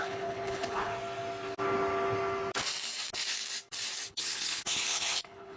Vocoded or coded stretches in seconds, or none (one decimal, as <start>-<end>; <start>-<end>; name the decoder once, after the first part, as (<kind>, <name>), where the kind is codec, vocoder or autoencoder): 0.0-0.9 (codec, HILCodec); 4.1-5.6